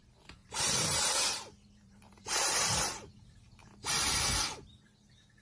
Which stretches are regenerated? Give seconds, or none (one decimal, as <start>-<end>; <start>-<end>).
0.4-2.8; 3.6-4.4